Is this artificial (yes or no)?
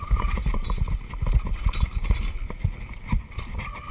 no